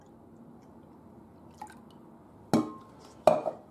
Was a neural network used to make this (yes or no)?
no